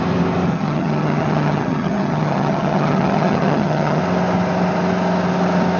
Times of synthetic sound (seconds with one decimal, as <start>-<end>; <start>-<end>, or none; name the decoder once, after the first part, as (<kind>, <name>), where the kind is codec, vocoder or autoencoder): 0.5-4.0 (vocoder, HiFi-GAN)